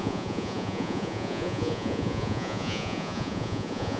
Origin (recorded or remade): remade